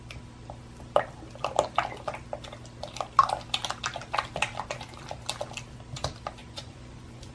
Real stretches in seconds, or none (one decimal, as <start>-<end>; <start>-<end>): 0.0-6.4